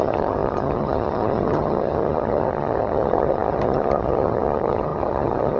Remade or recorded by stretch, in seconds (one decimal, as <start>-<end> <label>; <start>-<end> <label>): 0.0-5.6 remade